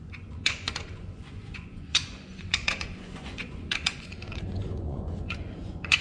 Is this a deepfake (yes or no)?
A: yes